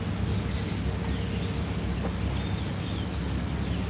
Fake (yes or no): no